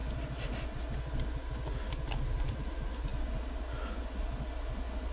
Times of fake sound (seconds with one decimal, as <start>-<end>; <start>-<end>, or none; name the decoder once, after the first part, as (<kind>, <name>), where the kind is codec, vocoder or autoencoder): none